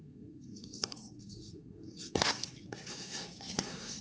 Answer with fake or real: fake